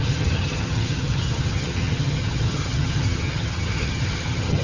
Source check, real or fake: fake